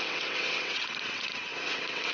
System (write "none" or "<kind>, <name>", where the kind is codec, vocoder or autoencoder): vocoder, WaveNeXt